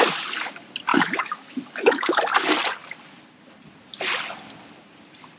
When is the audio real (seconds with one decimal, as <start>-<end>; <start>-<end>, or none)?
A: 0.0-0.9; 2.2-5.4